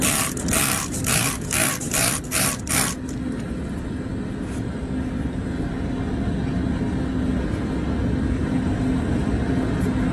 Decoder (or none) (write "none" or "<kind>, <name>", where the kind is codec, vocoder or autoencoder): none